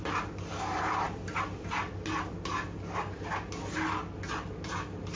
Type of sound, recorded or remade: recorded